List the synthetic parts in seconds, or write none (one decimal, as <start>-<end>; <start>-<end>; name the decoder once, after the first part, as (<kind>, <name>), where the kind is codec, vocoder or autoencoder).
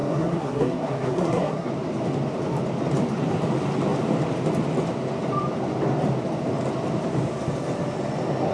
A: 0.0-1.7 (codec, SNAC)